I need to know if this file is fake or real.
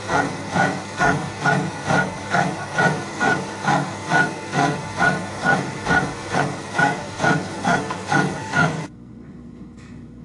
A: fake